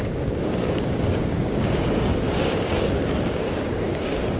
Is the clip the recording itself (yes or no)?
no